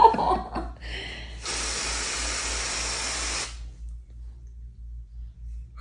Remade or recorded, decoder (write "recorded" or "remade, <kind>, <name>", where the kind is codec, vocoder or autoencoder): recorded